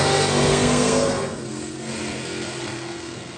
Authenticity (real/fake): fake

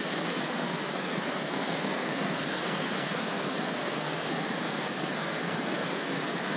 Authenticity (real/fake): fake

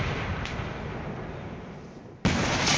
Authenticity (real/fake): real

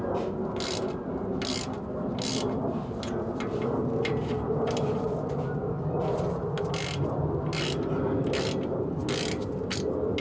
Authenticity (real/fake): real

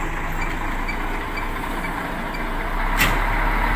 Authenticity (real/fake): real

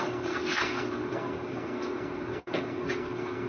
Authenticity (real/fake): fake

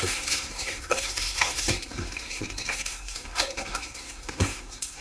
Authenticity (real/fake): fake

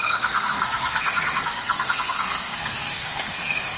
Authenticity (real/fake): fake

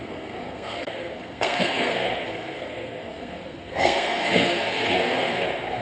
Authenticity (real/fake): fake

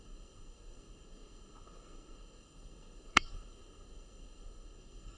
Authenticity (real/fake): fake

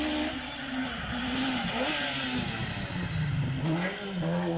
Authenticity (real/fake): real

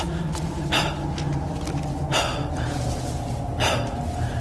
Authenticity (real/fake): real